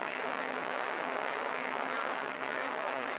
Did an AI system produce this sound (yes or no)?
yes